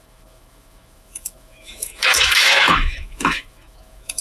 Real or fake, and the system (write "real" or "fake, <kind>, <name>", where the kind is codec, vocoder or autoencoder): fake, autoencoder, DAC-VAE